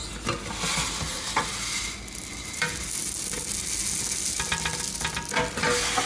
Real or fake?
real